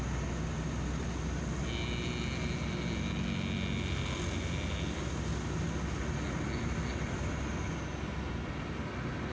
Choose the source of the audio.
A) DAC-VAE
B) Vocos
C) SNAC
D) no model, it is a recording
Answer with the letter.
D